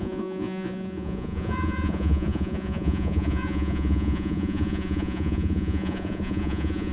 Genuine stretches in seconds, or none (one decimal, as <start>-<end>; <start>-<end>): none